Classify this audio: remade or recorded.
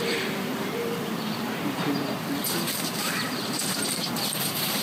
remade